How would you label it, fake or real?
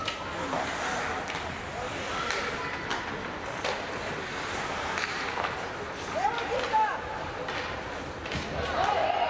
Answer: real